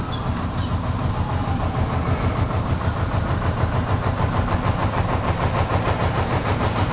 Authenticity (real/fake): real